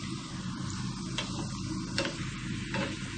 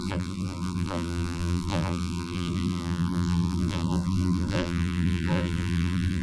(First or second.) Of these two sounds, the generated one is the second